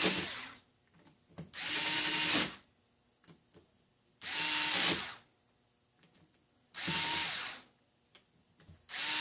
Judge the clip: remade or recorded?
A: recorded